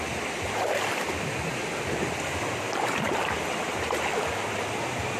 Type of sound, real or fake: real